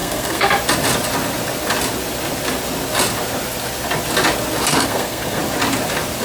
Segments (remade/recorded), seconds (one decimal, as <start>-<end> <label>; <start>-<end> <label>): 0.0-0.5 remade; 0.5-4.7 recorded; 4.7-5.4 remade; 5.4-6.2 recorded

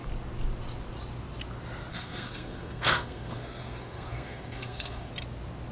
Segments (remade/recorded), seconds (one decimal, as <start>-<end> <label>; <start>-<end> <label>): 0.0-1.9 recorded; 1.9-5.1 remade; 5.1-5.7 recorded

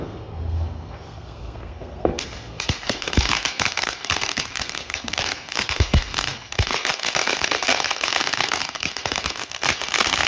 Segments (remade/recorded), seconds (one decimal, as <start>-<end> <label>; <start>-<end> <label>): 0.0-10.3 remade

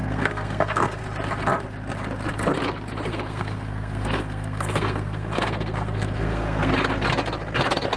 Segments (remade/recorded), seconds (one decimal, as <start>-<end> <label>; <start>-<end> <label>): 0.0-1.0 remade; 1.0-3.1 recorded; 3.1-6.7 remade; 6.7-8.0 recorded

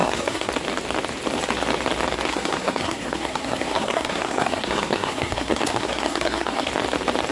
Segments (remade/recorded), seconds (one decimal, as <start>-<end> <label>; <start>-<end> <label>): 0.0-0.5 remade; 0.5-2.3 recorded; 2.3-6.7 remade; 6.7-7.3 recorded

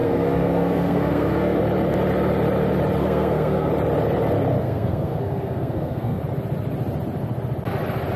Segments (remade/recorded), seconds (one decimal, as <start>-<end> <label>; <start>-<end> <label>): 0.0-1.6 remade; 1.6-3.0 recorded; 3.0-3.7 remade; 3.7-4.6 recorded; 4.6-6.2 remade; 6.2-8.2 recorded